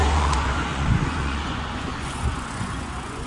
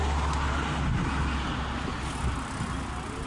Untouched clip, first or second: second